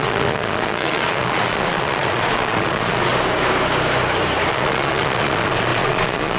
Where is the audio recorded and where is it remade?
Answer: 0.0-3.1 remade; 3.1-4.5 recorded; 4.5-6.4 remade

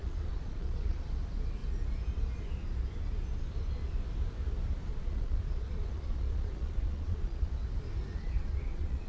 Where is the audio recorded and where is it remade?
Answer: 0.0-1.1 remade; 1.1-4.9 recorded; 4.9-7.5 remade; 7.5-8.1 recorded; 8.1-9.1 remade

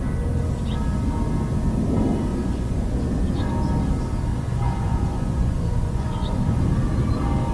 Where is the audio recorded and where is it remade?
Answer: 0.0-2.3 recorded; 2.3-3.5 remade; 3.5-4.3 recorded; 4.3-6.5 remade; 6.5-7.5 recorded

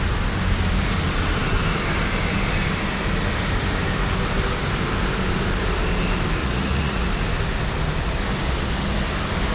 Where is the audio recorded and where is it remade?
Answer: 0.0-6.4 recorded; 6.4-7.1 remade; 7.1-9.5 recorded

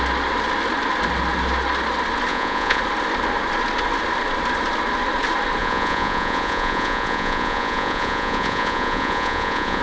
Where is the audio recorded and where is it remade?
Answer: 0.0-2.3 recorded; 2.3-2.8 remade; 2.8-5.6 recorded; 5.6-9.8 remade